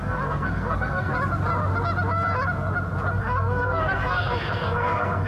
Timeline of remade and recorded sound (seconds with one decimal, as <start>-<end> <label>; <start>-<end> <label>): 0.0-1.1 remade; 1.1-3.2 recorded; 3.2-5.3 remade